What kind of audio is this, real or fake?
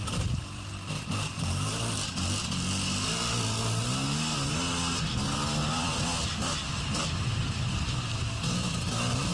real